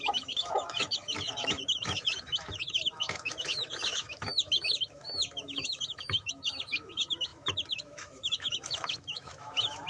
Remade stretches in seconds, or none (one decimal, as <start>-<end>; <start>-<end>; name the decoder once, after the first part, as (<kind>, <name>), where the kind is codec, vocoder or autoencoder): 0.0-9.9 (autoencoder, DAC-VAE)